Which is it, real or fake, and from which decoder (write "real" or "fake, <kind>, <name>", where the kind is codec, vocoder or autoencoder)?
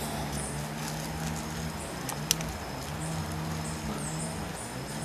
real